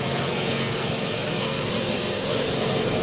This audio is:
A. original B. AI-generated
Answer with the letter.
B